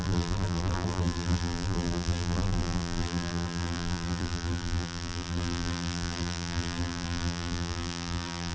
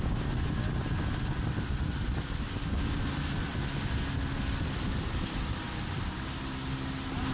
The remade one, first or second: first